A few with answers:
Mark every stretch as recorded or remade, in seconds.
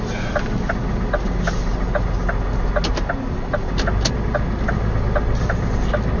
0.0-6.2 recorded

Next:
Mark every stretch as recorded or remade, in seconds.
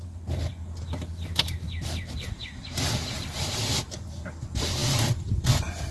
0.0-5.9 recorded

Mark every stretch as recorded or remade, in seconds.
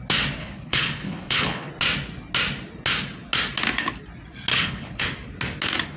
0.0-0.4 recorded; 0.4-1.7 remade; 1.7-4.5 recorded; 4.5-5.0 remade; 5.0-6.0 recorded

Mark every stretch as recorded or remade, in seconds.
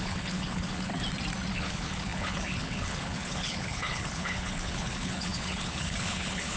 0.0-0.9 remade; 0.9-1.5 recorded; 1.5-6.6 remade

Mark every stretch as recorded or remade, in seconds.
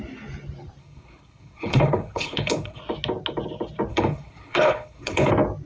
0.0-0.8 recorded; 0.8-2.8 remade; 2.8-3.9 recorded; 3.9-5.3 remade; 5.3-5.7 recorded